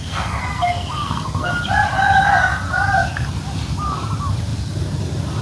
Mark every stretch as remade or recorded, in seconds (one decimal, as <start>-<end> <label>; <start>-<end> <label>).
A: 0.0-1.5 remade; 1.5-5.4 recorded